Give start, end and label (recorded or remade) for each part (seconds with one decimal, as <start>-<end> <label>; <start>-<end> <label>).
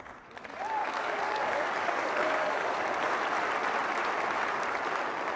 0.0-0.8 recorded; 0.8-3.2 remade; 3.2-5.4 recorded